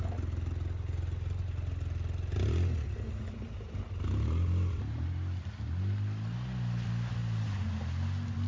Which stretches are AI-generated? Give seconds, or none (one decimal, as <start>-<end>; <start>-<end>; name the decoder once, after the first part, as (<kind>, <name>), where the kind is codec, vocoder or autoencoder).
none